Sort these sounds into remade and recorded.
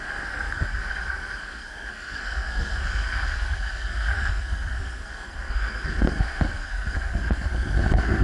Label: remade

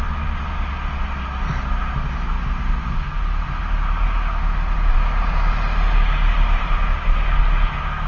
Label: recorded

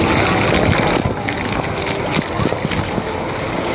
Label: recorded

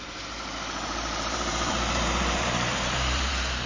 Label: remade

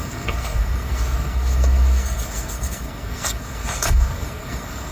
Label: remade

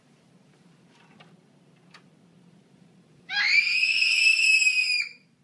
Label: remade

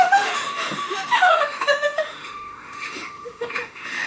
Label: remade